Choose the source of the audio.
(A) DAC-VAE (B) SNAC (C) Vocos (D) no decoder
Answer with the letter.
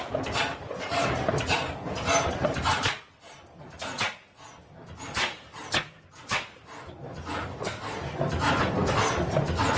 D